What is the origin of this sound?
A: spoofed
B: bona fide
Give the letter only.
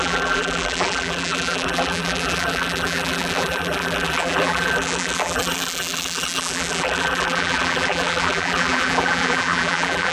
A